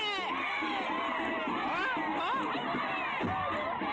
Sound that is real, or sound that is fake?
real